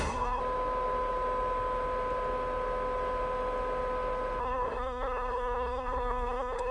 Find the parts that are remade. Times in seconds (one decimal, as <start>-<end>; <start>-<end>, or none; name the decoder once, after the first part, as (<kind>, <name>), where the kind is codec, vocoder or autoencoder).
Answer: 0.0-0.4 (codec, SNAC); 4.4-6.7